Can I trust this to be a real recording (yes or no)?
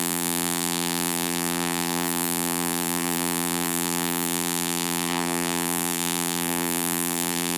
no